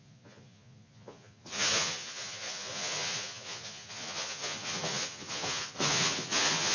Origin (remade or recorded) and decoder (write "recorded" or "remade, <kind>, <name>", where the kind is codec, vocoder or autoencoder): remade, vocoder, Vocos